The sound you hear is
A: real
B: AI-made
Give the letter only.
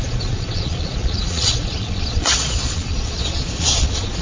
B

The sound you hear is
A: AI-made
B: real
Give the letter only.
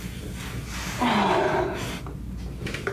B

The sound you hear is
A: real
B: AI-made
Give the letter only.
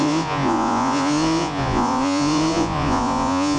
B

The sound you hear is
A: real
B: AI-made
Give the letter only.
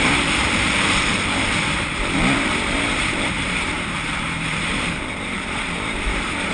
B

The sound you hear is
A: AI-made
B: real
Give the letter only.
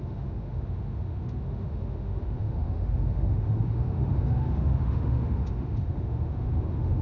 A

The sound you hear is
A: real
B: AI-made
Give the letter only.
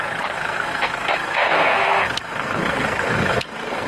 B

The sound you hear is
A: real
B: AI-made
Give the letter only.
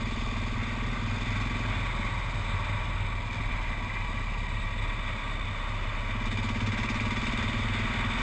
A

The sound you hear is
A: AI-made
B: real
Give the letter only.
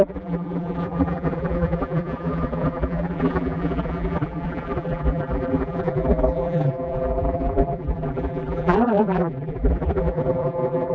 A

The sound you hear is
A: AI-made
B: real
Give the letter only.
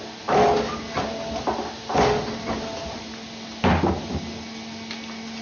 B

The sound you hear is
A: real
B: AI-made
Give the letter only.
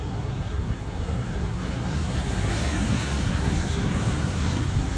B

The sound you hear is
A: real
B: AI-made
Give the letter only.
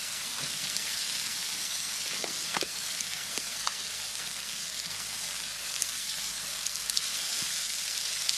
B